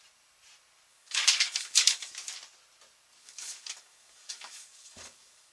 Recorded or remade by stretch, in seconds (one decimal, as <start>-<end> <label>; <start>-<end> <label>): 0.0-0.9 recorded; 0.9-2.1 remade; 2.1-3.2 recorded; 3.2-5.5 remade